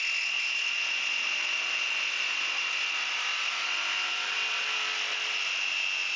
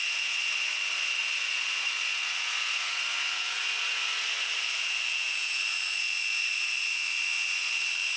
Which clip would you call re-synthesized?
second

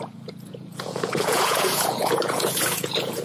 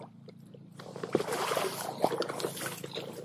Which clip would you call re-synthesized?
first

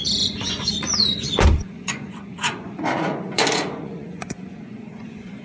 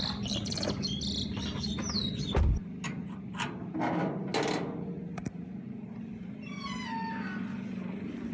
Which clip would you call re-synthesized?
first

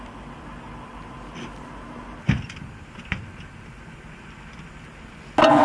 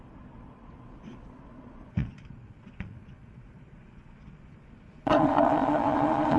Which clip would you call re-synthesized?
second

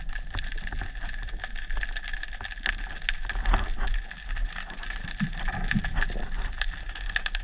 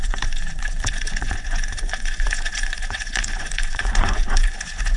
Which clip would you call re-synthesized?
second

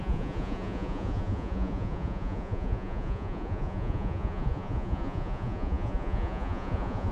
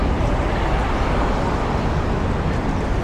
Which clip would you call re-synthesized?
first